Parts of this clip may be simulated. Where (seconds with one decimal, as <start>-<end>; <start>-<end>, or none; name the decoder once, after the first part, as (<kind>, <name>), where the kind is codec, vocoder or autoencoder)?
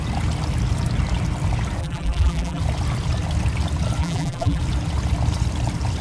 1.8-2.6 (vocoder, BigVGAN v2); 4.0-4.6